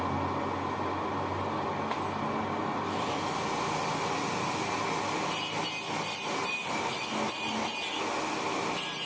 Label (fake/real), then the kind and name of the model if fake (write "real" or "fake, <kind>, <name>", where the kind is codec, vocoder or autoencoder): real